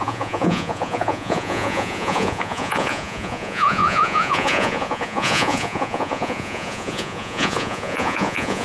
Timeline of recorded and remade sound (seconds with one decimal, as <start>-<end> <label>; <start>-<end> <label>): 0.0-8.6 remade